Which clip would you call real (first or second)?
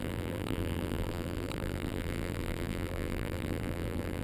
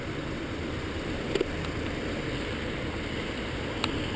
second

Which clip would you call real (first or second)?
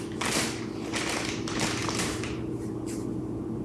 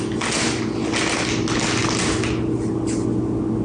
second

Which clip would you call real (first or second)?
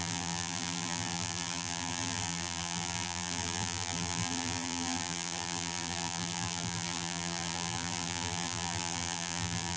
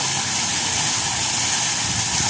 second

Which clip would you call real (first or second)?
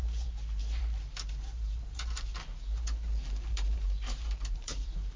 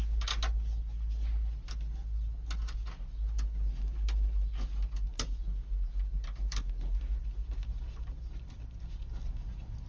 second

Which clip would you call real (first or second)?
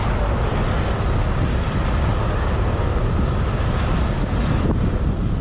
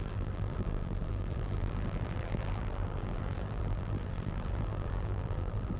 first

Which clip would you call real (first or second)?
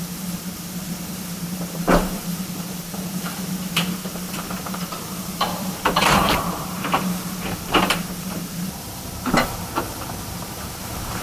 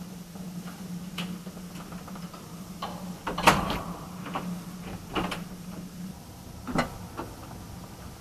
second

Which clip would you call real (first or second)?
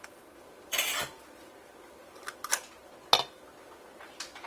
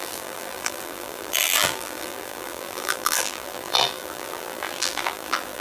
first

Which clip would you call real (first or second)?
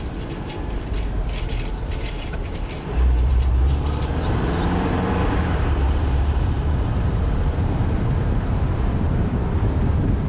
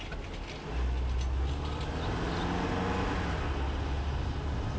second